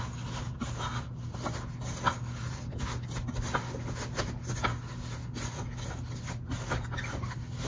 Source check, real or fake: real